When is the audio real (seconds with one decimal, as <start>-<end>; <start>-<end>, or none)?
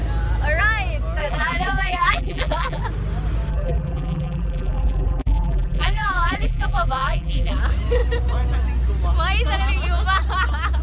0.0-1.2; 2.8-3.5; 7.6-10.8